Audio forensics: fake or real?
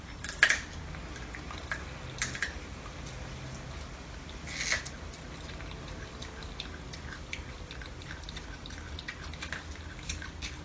real